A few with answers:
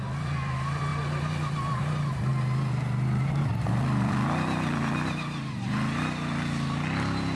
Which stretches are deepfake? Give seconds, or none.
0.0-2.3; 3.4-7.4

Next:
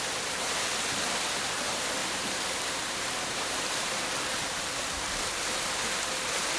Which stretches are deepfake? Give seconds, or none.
2.0-4.1

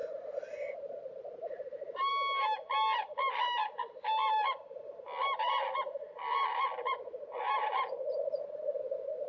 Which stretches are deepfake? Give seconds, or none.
none